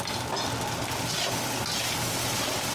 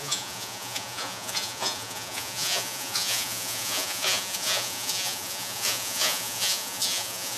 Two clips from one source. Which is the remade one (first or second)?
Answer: second